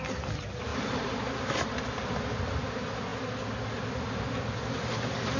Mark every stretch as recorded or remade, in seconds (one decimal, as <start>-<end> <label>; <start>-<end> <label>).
0.0-0.7 recorded; 0.7-1.8 remade; 1.8-5.4 recorded